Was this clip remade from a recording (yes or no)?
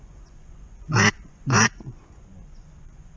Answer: yes